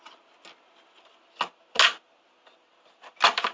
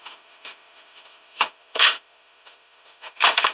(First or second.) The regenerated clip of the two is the second